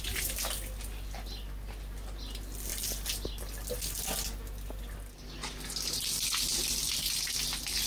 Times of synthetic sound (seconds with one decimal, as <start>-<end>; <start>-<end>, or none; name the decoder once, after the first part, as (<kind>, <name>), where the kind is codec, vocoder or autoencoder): none